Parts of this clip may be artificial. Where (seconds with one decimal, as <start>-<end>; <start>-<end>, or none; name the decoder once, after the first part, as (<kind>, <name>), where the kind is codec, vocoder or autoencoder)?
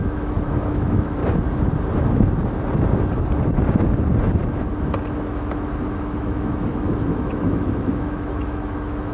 0.0-1.2 (autoencoder, DAC-VAE); 5.1-9.1